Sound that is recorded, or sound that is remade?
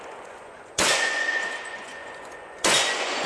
remade